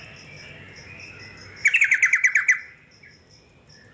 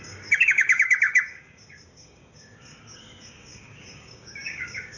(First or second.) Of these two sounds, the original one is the first